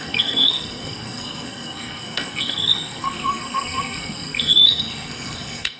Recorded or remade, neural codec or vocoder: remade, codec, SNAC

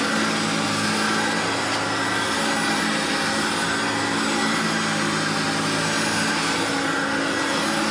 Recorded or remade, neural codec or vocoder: recorded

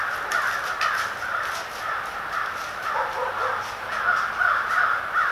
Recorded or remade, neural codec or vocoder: recorded